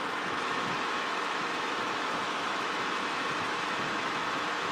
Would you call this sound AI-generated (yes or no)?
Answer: yes